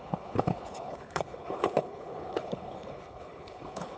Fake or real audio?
fake